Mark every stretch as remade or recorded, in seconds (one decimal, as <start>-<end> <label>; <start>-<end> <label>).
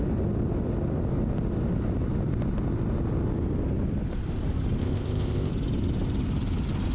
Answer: 0.0-4.8 recorded; 4.8-5.5 remade; 5.5-6.9 recorded